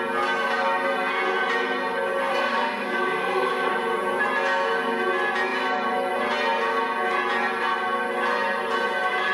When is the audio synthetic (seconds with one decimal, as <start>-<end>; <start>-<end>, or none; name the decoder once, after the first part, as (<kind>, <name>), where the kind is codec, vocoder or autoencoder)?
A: 2.3-3.7 (codec, SNAC)